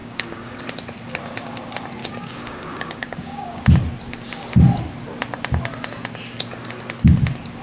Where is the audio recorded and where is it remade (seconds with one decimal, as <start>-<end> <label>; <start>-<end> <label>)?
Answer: 0.0-0.6 remade; 0.6-2.0 recorded; 2.0-3.6 remade; 3.6-7.6 recorded